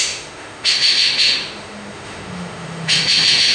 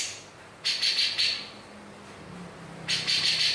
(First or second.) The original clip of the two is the second